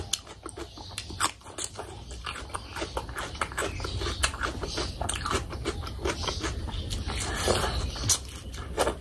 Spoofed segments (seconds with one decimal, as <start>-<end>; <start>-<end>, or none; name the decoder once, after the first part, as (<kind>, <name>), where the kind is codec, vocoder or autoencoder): none